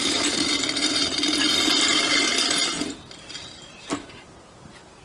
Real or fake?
real